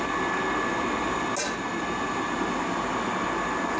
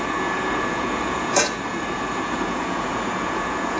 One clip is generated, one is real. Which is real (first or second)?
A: first